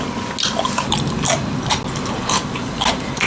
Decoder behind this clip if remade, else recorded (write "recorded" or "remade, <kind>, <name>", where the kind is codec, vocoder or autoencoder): recorded